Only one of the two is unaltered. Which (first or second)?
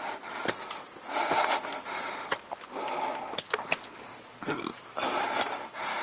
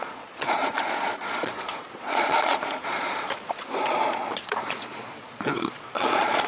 first